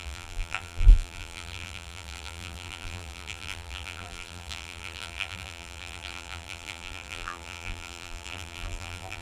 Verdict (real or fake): fake